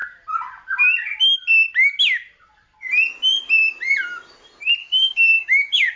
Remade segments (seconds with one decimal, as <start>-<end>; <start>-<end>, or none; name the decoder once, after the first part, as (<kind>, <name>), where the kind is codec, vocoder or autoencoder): 4.8-6.0 (codec, DAC)